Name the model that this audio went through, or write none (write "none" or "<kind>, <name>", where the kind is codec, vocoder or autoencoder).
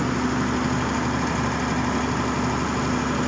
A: none